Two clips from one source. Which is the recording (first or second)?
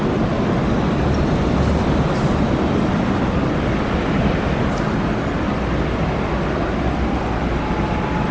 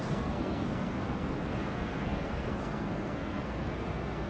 first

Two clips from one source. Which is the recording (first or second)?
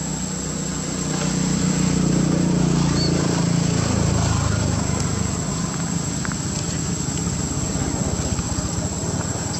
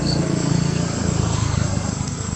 first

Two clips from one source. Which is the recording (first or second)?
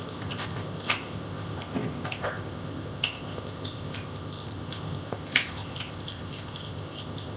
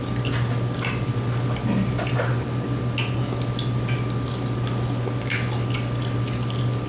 second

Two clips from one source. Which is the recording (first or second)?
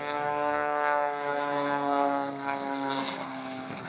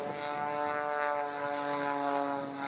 second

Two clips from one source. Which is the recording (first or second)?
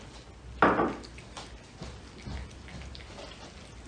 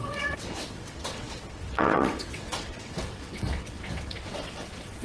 first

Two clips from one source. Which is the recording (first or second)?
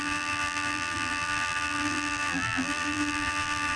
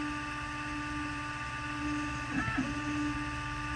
second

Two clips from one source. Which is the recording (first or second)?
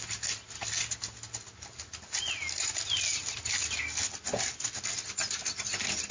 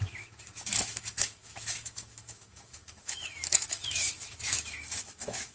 first